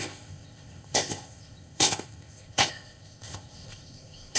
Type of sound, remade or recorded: remade